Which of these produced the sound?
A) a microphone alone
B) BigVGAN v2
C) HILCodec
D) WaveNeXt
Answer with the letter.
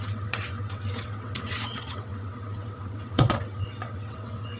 D